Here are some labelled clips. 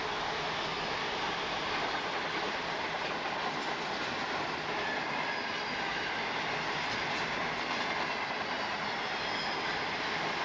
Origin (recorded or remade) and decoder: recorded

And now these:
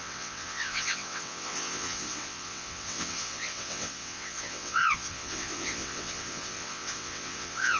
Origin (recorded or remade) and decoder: remade, vocoder, WaveNeXt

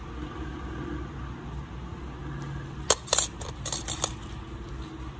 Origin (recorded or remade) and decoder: recorded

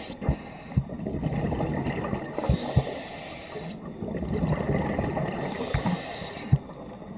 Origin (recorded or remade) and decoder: recorded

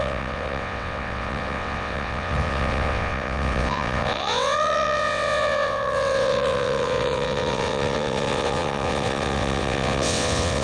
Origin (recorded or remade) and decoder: remade, vocoder, WaveNeXt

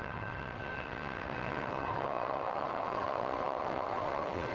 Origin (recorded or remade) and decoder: remade, vocoder, WaveNeXt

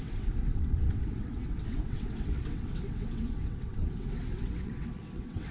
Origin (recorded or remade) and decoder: remade, vocoder, WaveNeXt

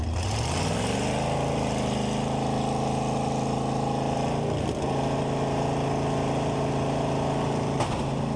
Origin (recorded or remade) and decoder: recorded